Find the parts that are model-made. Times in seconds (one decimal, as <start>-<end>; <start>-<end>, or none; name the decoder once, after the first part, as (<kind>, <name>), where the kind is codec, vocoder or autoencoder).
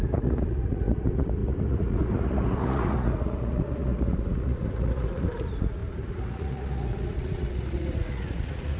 0.0-8.8 (vocoder, Vocos)